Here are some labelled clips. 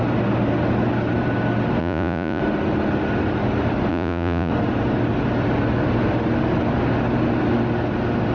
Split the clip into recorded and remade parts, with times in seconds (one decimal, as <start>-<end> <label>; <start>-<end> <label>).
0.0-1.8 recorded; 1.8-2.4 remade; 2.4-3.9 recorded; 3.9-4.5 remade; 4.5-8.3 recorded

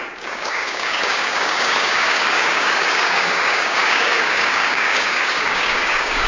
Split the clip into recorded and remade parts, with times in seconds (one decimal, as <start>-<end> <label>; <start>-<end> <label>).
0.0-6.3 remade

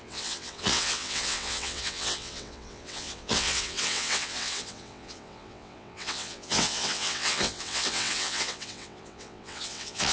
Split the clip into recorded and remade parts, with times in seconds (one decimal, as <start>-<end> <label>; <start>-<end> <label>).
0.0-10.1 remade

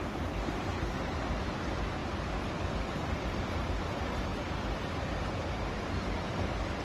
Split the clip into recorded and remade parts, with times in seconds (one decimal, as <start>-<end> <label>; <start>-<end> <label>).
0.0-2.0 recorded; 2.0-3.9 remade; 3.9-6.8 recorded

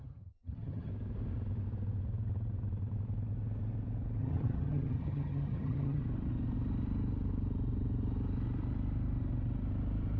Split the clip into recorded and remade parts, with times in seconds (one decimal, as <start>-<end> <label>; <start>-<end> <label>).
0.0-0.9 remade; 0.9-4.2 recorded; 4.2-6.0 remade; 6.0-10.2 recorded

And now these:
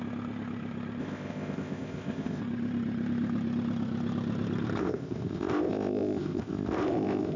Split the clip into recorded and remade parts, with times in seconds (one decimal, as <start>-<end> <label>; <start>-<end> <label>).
0.0-1.0 recorded; 1.0-2.4 remade; 2.4-4.8 recorded; 4.8-7.4 remade

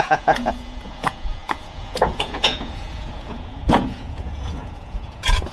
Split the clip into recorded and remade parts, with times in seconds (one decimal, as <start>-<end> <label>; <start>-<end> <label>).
0.0-5.5 remade